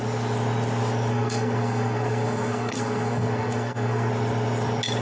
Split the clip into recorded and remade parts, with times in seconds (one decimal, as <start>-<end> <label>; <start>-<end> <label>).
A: 0.0-1.1 recorded; 1.1-4.1 remade; 4.1-5.0 recorded